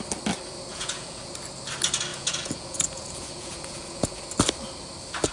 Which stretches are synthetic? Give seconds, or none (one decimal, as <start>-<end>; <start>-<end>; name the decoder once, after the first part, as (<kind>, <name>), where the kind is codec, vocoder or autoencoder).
0.7-1.3 (vocoder, Vocos); 2.1-4.2